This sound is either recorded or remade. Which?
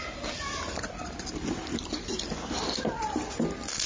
recorded